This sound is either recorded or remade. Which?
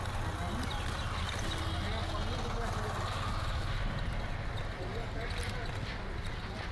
recorded